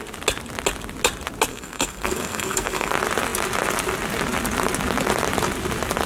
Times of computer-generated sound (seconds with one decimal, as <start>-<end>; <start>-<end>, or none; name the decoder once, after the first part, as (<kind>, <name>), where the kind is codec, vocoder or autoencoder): 1.5-2.9 (codec, SNAC)